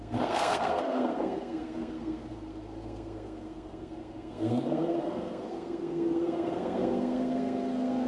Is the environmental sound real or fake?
fake